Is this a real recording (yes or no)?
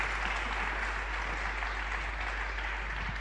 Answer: yes